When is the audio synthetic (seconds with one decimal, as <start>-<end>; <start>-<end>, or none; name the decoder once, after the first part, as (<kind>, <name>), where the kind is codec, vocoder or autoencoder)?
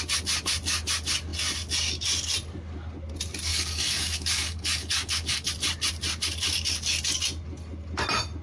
3.5-5.5 (codec, DAC)